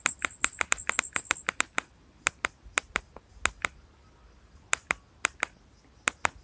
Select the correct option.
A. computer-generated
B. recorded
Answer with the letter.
B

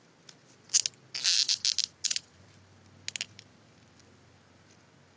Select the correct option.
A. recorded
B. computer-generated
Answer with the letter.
A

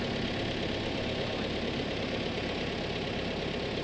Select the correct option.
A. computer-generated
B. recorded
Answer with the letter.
B